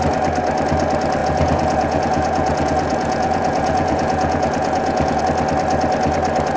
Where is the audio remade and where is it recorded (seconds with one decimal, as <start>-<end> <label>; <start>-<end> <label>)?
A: 0.0-1.2 recorded; 1.2-5.2 remade; 5.2-6.6 recorded